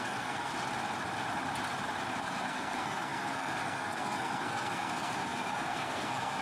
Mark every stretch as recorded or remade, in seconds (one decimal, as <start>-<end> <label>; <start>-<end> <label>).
0.0-0.5 remade; 0.5-2.2 recorded; 2.2-6.4 remade